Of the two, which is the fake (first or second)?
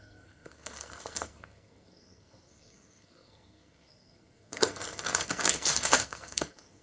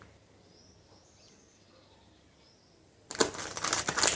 first